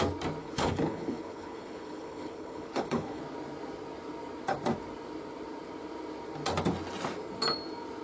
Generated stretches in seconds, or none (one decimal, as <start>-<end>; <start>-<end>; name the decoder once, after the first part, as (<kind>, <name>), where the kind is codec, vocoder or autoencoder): 0.4-3.2 (codec, HILCodec)